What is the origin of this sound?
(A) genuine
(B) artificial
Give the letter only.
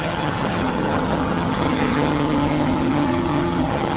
B